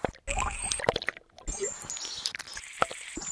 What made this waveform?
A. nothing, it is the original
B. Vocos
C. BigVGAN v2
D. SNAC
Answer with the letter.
A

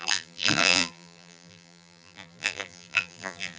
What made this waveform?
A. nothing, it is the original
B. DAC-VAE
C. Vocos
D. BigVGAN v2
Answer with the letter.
D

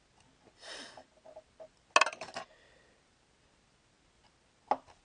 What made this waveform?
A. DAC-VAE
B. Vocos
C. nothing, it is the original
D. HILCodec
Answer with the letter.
C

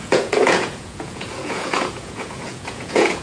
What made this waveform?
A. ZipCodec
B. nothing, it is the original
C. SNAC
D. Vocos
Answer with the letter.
D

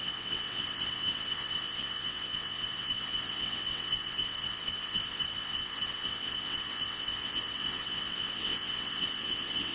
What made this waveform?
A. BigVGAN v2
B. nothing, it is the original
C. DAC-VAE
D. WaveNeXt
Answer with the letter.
D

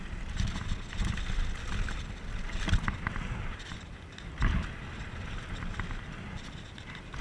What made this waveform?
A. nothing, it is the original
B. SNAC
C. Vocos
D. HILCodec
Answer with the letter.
A